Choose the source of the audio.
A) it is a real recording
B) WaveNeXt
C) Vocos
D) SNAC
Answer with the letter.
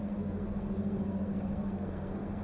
D